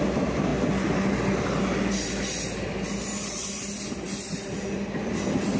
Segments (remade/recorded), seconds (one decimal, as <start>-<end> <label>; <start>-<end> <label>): 0.0-5.6 recorded